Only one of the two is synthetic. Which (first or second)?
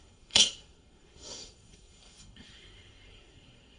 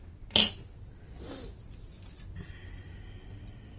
first